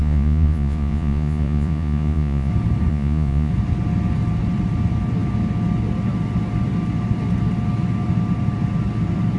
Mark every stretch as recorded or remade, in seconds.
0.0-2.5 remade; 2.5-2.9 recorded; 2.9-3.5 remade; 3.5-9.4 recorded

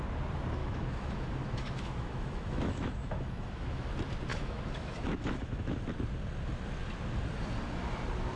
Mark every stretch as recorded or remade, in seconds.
0.0-0.6 recorded; 0.6-3.9 remade; 3.9-4.3 recorded; 4.3-5.8 remade; 5.8-8.4 recorded